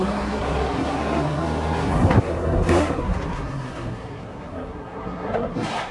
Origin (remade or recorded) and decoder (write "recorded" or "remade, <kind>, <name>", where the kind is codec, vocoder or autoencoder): remade, codec, SNAC